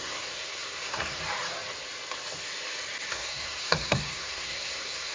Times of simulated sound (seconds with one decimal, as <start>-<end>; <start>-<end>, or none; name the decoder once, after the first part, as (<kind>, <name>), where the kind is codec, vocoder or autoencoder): 0.0-1.2 (codec, SNAC); 3.1-5.1